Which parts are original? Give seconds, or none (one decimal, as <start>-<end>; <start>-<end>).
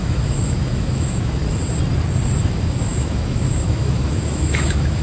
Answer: 1.4-2.4